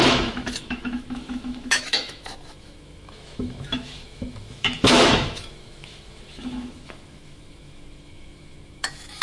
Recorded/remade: remade